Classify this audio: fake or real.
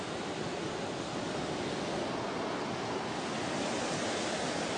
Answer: real